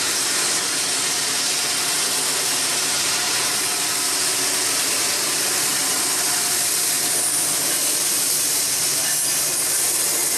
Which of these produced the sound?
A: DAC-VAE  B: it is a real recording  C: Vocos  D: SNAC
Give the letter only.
B